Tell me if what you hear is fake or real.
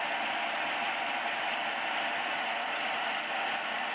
real